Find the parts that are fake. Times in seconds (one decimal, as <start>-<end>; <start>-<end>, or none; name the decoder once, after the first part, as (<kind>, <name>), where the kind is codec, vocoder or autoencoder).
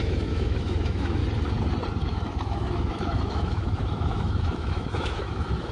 0.0-1.2 (autoencoder, DAC-VAE); 2.0-5.7